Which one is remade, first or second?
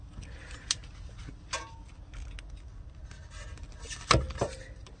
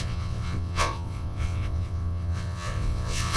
second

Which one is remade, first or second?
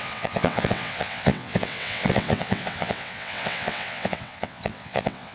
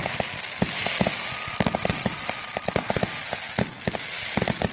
first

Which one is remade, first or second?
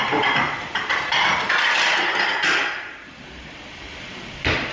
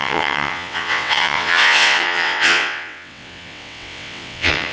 second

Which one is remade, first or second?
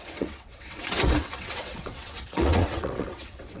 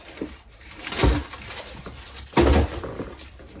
first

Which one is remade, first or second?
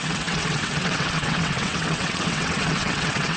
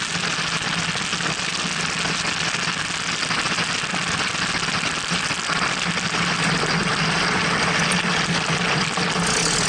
first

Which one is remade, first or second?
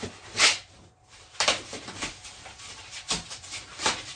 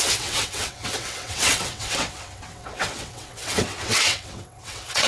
second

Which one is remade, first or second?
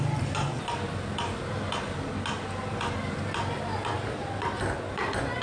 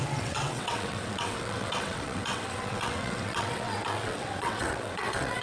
second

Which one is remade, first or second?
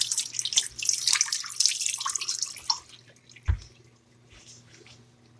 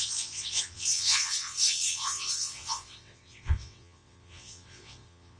second